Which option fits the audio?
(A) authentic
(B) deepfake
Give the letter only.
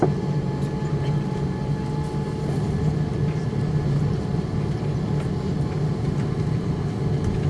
A